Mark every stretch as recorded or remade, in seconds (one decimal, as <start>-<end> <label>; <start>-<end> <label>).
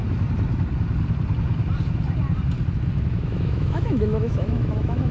0.0-3.1 recorded; 3.1-5.1 remade